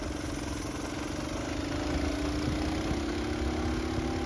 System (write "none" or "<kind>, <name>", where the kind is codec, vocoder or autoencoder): none